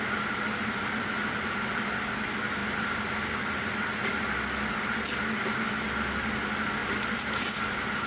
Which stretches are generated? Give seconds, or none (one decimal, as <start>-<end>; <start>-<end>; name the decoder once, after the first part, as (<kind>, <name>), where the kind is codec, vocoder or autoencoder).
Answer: 6.8-8.1 (vocoder, BigVGAN v2)